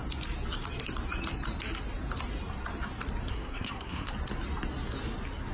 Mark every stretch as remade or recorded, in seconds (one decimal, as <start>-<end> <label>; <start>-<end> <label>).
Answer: 0.0-3.3 recorded; 3.3-4.1 remade; 4.1-5.5 recorded